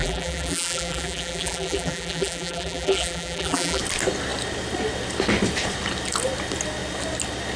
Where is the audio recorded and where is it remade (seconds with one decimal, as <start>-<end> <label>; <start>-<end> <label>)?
0.0-3.8 remade; 3.8-7.6 recorded